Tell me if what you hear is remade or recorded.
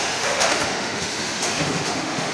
remade